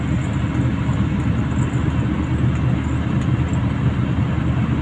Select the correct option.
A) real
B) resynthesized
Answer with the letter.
A